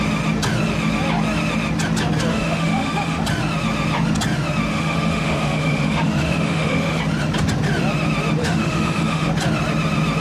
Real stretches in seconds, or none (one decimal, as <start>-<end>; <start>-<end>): 0.0-2.3; 3.2-4.7; 7.0-8.4; 9.3-10.2